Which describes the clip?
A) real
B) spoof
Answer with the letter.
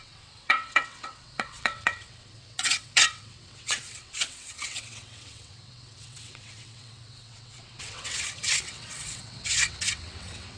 B